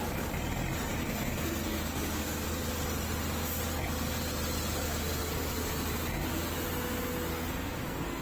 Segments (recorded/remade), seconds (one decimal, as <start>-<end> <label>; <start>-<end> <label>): 0.0-1.0 recorded; 1.0-2.5 remade; 2.5-7.3 recorded; 7.3-8.2 remade